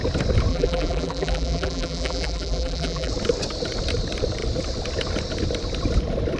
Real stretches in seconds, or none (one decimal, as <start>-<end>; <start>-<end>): 0.0-0.5; 3.1-6.4